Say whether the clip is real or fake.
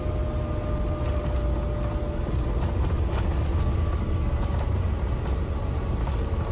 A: real